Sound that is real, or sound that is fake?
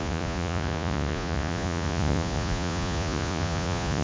fake